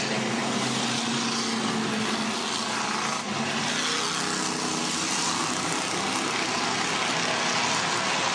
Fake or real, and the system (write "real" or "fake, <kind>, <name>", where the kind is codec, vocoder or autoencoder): real